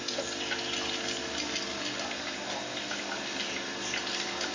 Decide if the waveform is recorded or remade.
recorded